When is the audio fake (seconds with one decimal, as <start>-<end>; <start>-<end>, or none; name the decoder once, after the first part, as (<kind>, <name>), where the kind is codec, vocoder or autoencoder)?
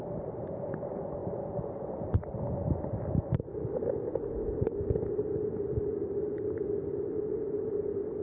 none